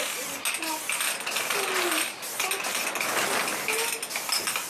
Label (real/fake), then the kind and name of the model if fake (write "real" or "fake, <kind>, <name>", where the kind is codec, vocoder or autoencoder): real